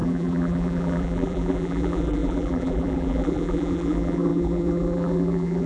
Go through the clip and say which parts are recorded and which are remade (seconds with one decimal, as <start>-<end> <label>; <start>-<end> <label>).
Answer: 0.0-5.7 remade